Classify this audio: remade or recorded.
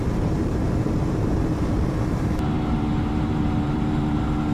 remade